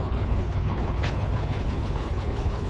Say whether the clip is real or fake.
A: fake